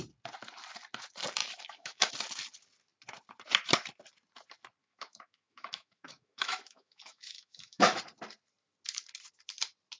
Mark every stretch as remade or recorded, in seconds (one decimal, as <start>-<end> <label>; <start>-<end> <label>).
0.0-1.4 recorded; 1.4-2.1 remade; 2.1-4.8 recorded; 4.8-8.0 remade; 8.0-10.0 recorded